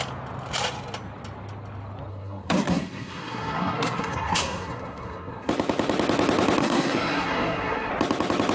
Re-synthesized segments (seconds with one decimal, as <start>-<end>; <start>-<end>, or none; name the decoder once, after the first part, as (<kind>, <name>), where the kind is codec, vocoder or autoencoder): 2.1-5.5 (codec, SNAC); 6.6-7.9